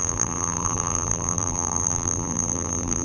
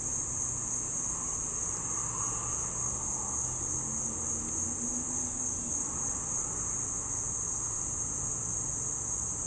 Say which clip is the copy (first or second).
first